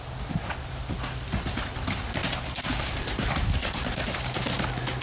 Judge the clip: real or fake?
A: real